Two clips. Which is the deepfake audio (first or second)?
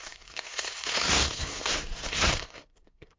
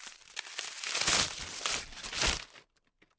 first